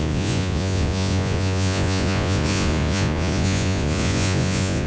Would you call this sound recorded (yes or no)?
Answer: no